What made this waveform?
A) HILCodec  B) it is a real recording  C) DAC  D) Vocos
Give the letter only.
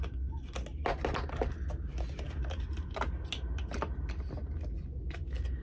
B